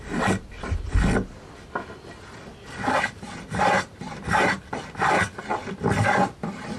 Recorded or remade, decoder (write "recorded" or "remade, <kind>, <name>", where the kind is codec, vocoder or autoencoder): recorded